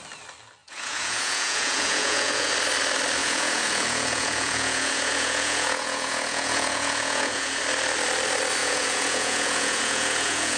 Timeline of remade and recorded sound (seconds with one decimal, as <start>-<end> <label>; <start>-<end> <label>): 0.0-0.6 recorded; 0.6-2.5 remade; 2.5-3.2 recorded; 3.2-7.6 remade; 7.6-8.6 recorded; 8.6-10.6 remade